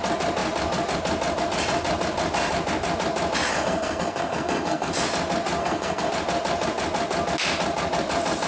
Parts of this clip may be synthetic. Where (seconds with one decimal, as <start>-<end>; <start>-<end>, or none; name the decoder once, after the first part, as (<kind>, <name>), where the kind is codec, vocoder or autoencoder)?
3.5-4.9 (codec, SNAC); 5.6-6.1